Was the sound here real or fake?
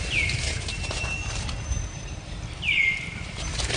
real